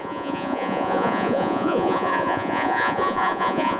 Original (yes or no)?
no